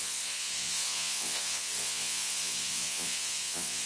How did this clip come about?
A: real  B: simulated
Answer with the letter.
B